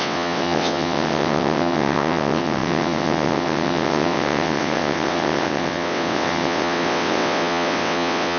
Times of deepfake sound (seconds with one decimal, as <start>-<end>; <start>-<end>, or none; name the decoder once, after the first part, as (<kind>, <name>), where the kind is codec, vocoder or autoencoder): 0.0-8.4 (vocoder, WaveNeXt)